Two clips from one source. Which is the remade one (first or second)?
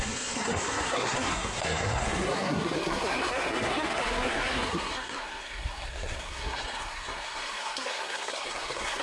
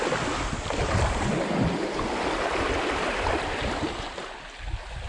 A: first